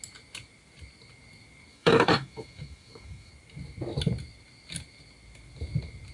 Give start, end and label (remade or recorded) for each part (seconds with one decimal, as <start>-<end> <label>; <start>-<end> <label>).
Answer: 0.0-1.7 recorded; 1.7-3.3 remade; 3.3-6.1 recorded